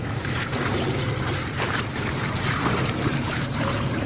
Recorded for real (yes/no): no